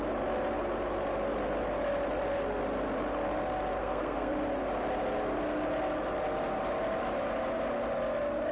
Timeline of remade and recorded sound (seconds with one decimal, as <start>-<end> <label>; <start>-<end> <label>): 0.0-3.8 recorded; 3.8-4.3 remade; 4.3-8.5 recorded